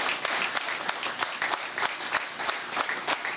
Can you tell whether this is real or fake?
real